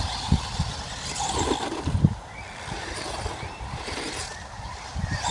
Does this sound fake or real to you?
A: real